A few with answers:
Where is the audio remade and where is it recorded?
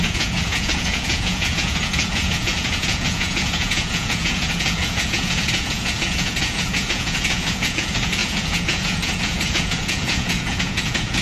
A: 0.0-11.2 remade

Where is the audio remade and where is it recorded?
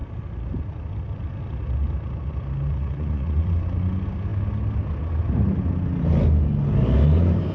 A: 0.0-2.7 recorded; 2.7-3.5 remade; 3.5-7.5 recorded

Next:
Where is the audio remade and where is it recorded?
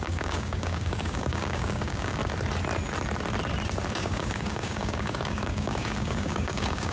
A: 0.0-2.2 remade; 2.2-3.9 recorded; 3.9-6.9 remade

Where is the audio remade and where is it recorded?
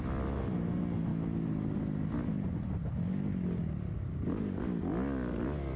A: 0.0-5.8 recorded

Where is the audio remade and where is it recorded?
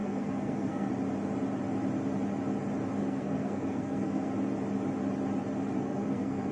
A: 0.0-0.9 remade; 0.9-3.0 recorded; 3.0-4.3 remade; 4.3-5.8 recorded; 5.8-6.5 remade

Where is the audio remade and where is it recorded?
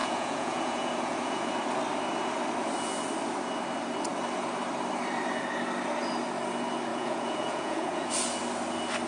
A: 0.0-1.5 remade; 1.5-6.9 recorded; 6.9-8.1 remade; 8.1-9.1 recorded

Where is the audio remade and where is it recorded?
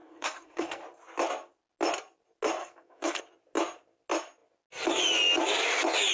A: 0.0-0.8 remade; 0.8-2.6 recorded; 2.6-3.2 remade; 3.2-6.1 recorded